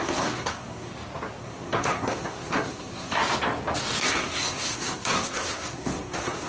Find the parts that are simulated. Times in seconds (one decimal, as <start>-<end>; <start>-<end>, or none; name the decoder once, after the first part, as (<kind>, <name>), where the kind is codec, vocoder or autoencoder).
0.0-0.9 (codec, SNAC); 1.4-3.2; 4.0-6.5